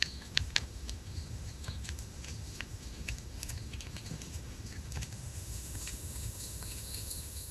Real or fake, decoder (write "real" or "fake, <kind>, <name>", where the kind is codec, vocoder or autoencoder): fake, autoencoder, DAC-VAE